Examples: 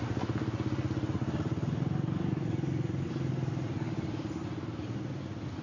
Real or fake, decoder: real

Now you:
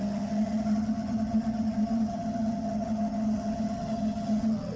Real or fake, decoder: fake, vocoder, HiFi-GAN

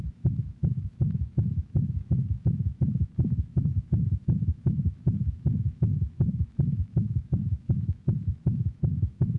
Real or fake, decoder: fake, autoencoder, DAC-VAE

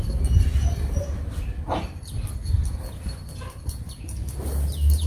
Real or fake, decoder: real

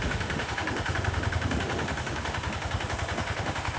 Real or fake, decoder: fake, autoencoder, DAC-VAE